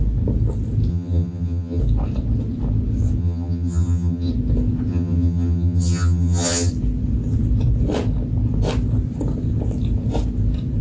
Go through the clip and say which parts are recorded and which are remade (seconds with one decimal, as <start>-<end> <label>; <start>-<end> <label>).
0.0-0.9 recorded; 0.9-1.8 remade; 1.8-3.2 recorded; 3.2-4.3 remade; 4.3-4.9 recorded; 4.9-6.7 remade; 6.7-10.8 recorded